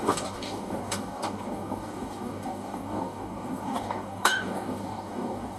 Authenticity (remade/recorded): remade